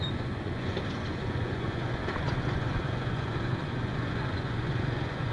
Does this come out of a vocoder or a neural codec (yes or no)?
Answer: yes